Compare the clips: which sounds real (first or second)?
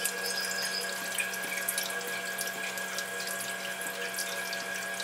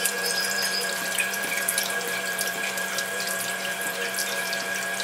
first